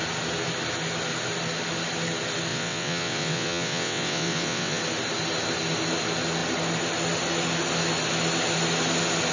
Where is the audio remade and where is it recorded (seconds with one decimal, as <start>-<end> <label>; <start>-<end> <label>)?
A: 0.0-2.5 recorded; 2.5-4.8 remade; 4.8-9.3 recorded